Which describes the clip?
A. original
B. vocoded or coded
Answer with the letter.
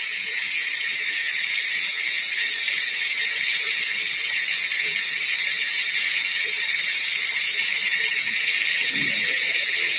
A